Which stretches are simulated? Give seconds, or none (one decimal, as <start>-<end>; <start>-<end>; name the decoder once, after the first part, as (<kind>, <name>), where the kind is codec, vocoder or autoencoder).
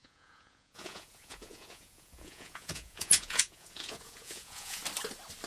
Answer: 0.0-4.8 (vocoder, Vocos)